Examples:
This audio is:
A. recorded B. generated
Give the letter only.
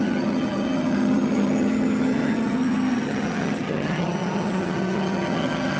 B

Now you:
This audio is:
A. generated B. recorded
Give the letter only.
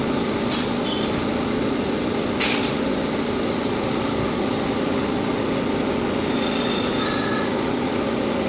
B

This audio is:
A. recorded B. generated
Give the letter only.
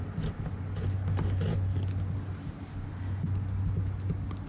A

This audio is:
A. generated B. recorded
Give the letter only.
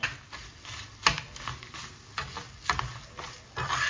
B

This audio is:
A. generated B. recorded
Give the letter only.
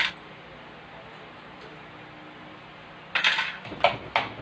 B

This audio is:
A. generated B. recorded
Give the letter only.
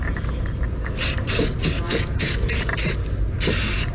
B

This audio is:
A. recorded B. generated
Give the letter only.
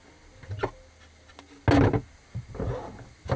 A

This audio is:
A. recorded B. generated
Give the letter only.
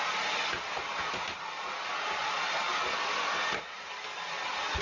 A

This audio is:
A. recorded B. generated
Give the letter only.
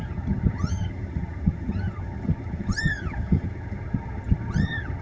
B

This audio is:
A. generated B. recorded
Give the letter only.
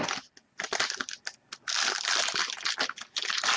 B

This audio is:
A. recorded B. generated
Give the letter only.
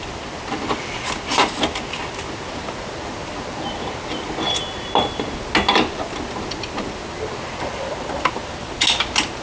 A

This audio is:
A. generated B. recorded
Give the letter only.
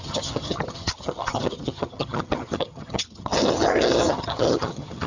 A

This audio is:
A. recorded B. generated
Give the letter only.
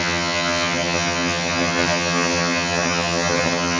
B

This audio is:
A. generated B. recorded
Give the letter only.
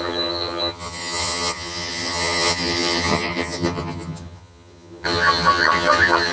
A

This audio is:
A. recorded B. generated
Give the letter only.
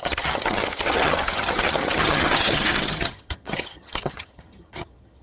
B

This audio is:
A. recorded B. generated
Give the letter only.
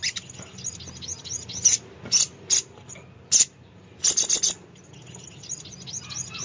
A